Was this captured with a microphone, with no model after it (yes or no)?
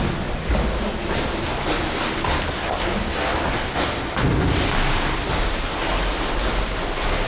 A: yes